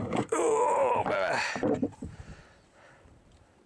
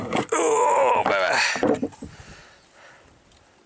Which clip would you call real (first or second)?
second